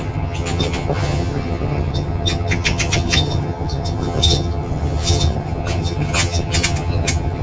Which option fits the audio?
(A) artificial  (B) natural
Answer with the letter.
A